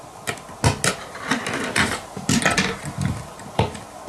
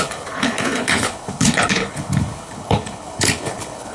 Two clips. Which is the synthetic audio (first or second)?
second